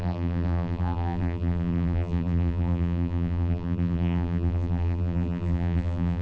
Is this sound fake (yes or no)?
yes